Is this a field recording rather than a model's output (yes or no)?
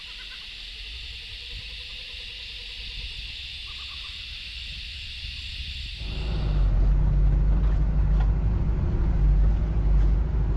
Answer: yes